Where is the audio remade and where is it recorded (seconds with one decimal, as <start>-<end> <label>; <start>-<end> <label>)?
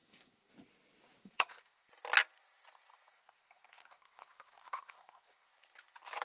0.0-0.5 remade; 0.5-1.2 recorded; 1.2-1.9 remade; 1.9-3.1 recorded; 3.1-5.5 remade; 5.5-6.2 recorded